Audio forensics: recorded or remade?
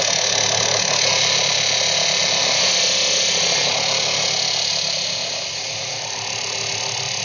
recorded